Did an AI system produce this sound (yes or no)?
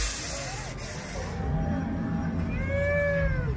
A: no